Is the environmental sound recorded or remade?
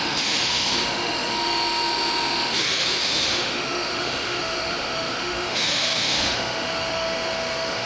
remade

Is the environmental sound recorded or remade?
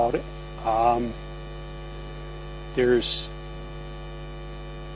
recorded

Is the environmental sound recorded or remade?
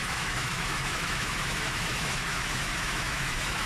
remade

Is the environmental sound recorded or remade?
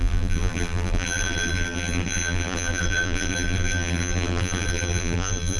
remade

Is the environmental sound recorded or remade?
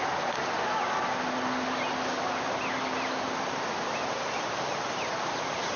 recorded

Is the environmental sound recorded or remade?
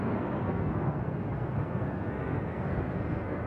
remade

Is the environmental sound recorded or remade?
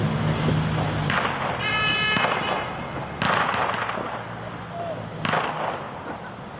recorded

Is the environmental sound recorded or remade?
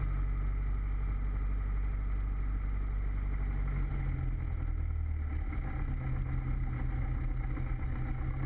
recorded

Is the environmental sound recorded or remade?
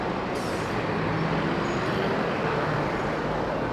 recorded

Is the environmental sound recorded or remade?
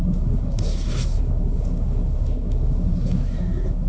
remade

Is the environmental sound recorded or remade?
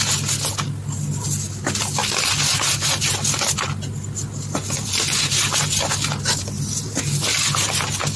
recorded